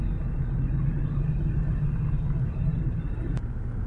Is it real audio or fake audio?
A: real